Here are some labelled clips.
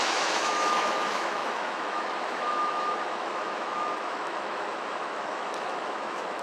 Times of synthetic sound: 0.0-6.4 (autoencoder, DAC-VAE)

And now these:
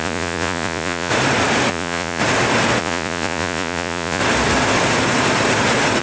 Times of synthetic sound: 0.0-1.1 (vocoder, Vocos); 1.7-2.2; 2.8-4.2

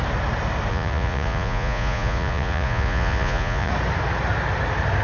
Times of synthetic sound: 0.7-3.7 (vocoder, Vocos)

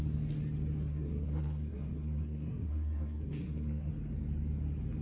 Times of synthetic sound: 0.9-3.9 (codec, SNAC)

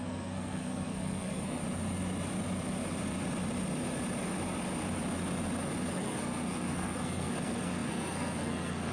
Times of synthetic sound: 0.0-1.6 (codec, SNAC); 5.9-8.9

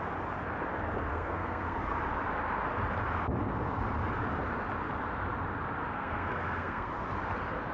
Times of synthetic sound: 1.1-1.8 (codec, SNAC); 5.9-6.9

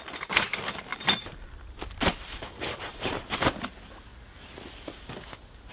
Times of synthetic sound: 0.9-1.5 (vocoder, BigVGAN v2); 2.1-3.1